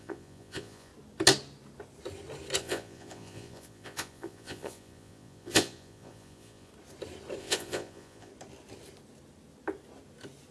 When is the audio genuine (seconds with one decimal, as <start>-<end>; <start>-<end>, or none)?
0.9-2.6; 6.7-7.4; 8.3-10.5